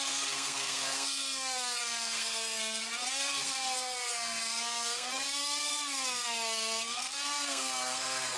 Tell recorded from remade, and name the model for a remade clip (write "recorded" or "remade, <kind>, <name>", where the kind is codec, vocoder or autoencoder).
remade, codec, SNAC